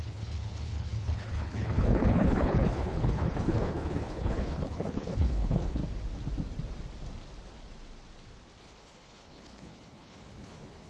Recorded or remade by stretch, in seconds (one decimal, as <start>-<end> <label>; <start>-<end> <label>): 0.0-5.8 remade; 5.8-8.6 recorded; 8.6-10.9 remade